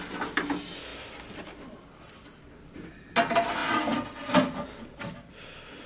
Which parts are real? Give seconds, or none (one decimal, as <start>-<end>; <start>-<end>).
0.0-5.9